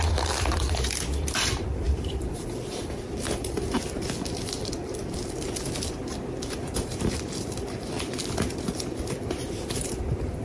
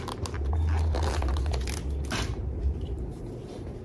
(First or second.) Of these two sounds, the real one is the second